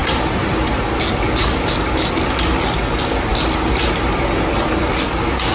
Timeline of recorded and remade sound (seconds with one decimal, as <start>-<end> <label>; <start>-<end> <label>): 0.0-5.5 recorded